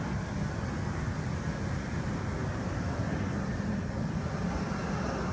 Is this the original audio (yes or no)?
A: yes